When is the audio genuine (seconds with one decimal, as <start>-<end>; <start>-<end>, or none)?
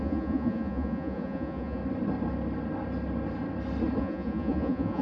1.8-4.0